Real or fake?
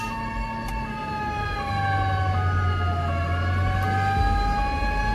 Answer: real